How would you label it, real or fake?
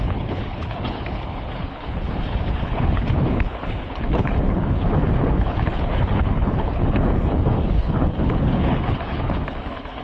fake